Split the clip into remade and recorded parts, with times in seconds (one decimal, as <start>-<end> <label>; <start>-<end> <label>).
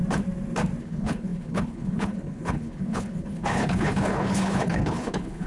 0.0-0.8 recorded; 0.8-5.5 remade